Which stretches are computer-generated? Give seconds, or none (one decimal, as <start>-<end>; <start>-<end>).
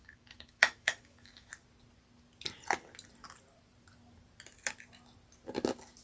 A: 0.0-1.5